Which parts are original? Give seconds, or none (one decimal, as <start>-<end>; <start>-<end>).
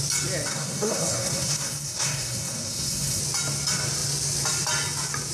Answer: 0.0-0.5; 3.2-5.3